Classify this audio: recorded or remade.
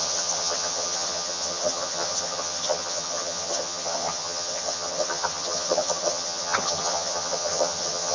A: remade